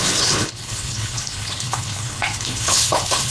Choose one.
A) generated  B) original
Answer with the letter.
A